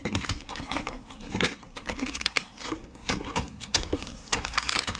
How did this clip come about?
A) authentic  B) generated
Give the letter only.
B